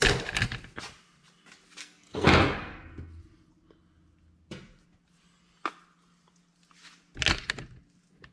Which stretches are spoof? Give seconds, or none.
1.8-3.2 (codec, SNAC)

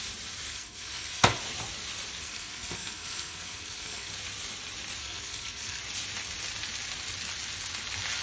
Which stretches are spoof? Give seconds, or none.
0.5-1.4 (codec, SNAC); 2.2-4.1; 5.0-5.8

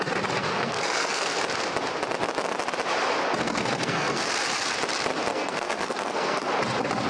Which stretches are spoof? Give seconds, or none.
0.4-1.4 (codec, SNAC); 3.4-4.3; 5.3-6.5

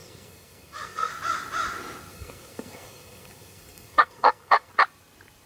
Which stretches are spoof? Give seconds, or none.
0.0-1.1 (codec, SNAC); 2.1-4.7

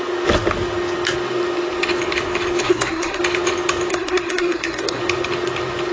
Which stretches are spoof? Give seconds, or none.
2.6-3.2 (codec, SNAC); 3.9-5.0

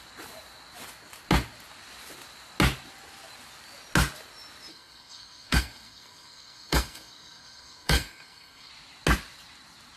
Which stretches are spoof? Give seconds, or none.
4.7-8.7 (codec, SNAC)